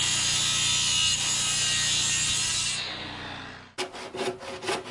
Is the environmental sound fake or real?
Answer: real